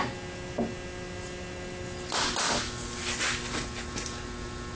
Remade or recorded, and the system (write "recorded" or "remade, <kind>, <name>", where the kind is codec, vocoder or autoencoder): recorded